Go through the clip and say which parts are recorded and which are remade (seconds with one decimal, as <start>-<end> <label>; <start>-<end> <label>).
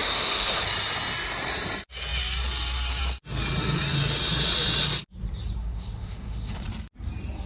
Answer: 0.0-0.6 remade; 0.6-5.6 recorded; 5.6-6.6 remade; 6.6-7.5 recorded